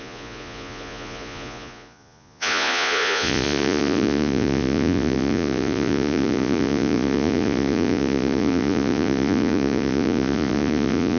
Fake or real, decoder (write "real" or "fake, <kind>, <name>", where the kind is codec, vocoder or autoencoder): fake, vocoder, Vocos